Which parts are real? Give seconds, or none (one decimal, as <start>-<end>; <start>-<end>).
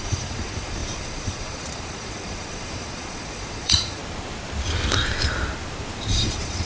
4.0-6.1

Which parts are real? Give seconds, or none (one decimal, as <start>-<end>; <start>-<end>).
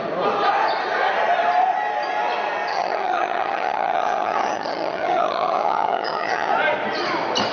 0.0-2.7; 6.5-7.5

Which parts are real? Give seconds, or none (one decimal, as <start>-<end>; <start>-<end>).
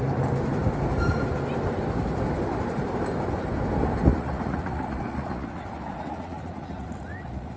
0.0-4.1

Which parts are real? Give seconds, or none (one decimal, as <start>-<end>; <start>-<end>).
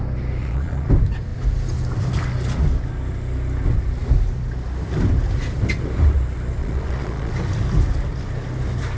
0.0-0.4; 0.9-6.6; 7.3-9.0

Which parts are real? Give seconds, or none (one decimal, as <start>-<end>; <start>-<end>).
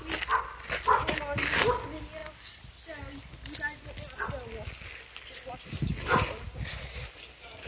0.0-7.7